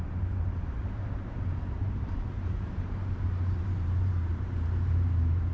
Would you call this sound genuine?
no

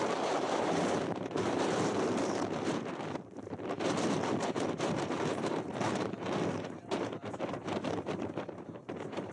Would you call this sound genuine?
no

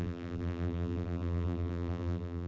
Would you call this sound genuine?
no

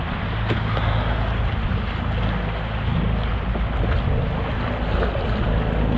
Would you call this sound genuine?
yes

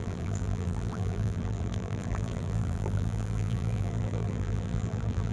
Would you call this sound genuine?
no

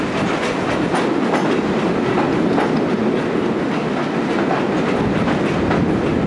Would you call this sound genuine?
yes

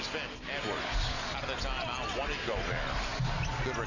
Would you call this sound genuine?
yes